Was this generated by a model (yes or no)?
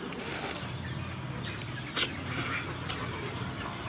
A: no